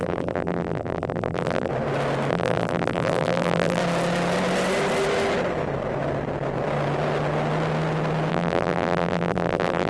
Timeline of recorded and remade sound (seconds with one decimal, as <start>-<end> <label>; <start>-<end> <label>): 0.0-1.7 remade; 1.7-2.3 recorded; 2.3-3.8 remade; 3.8-8.3 recorded; 8.3-9.9 remade